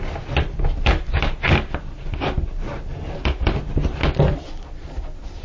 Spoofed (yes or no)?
no